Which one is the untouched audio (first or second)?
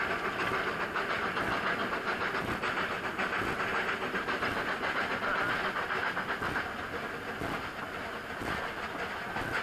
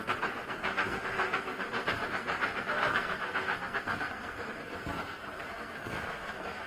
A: first